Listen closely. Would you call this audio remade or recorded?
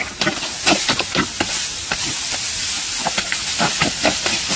recorded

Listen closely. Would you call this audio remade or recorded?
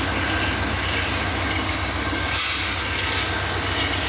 recorded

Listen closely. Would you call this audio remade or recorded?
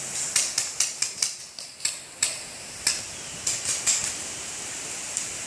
recorded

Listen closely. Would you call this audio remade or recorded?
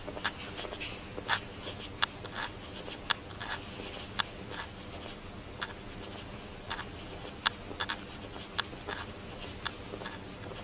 recorded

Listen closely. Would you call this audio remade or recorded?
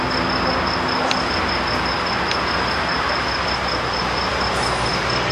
recorded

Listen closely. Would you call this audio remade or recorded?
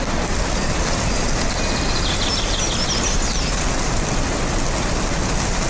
recorded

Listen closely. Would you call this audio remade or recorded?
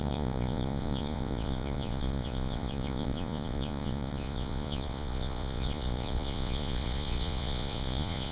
remade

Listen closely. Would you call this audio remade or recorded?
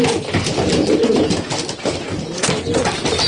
recorded